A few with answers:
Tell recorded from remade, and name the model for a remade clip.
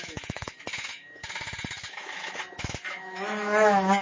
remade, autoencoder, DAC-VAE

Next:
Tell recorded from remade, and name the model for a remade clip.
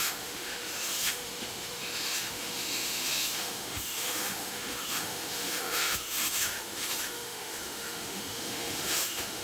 remade, autoencoder, DAC-VAE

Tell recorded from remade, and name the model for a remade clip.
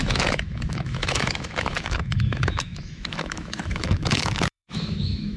remade, autoencoder, DAC-VAE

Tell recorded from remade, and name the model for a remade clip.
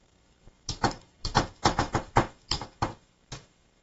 remade, autoencoder, DAC-VAE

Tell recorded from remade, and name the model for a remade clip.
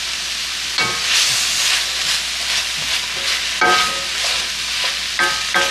recorded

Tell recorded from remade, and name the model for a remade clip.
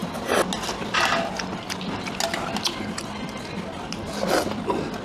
recorded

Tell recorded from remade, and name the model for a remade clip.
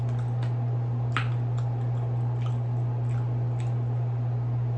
recorded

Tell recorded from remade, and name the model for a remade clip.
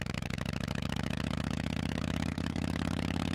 remade, autoencoder, DAC-VAE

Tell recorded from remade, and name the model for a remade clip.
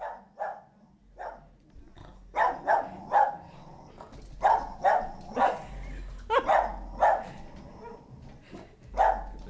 recorded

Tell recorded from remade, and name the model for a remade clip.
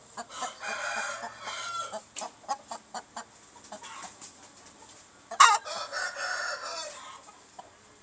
recorded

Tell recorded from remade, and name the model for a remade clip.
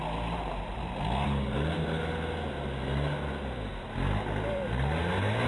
recorded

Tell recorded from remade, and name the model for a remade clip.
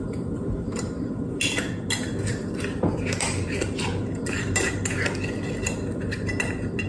recorded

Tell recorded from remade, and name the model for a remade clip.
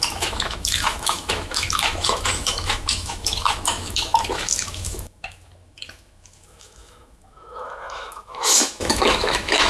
remade, autoencoder, DAC-VAE